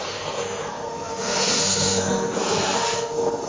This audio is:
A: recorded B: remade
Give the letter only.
B